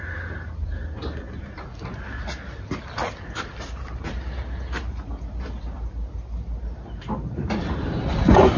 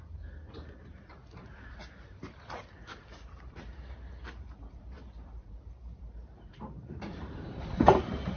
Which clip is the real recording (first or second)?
first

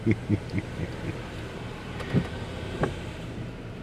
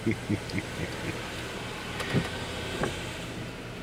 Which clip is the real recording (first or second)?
second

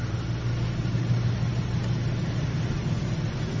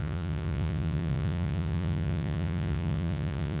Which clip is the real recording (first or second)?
first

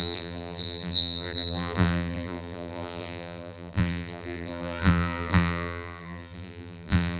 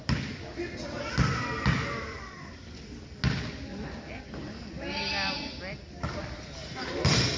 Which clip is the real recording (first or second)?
second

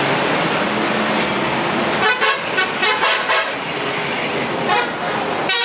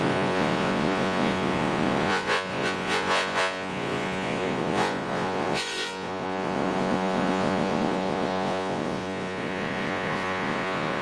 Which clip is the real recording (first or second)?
first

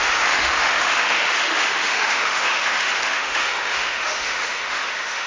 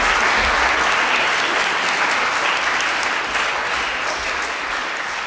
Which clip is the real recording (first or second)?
second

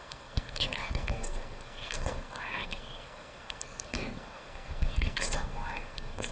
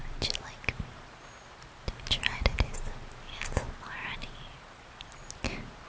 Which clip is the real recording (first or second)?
second